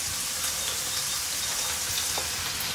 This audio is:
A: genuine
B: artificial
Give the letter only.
A